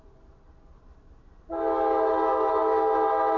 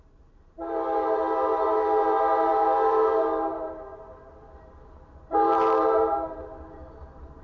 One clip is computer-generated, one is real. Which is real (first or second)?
first